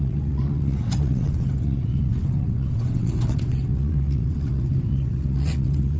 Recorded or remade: remade